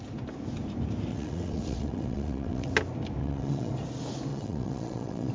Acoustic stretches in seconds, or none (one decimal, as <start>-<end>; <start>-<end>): 0.0-1.1; 2.7-3.2; 3.7-4.3